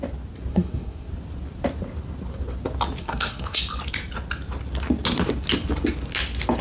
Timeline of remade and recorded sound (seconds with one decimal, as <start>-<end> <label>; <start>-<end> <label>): 0.0-0.5 recorded; 0.5-1.1 remade; 1.1-3.0 recorded; 3.0-3.6 remade; 3.6-6.6 recorded